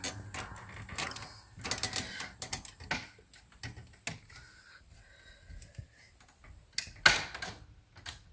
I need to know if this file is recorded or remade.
recorded